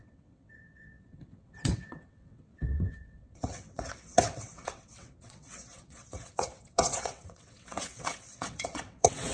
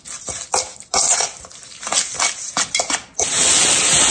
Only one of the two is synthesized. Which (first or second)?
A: first